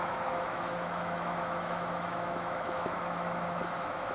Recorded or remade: remade